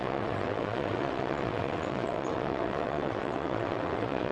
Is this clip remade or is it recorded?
remade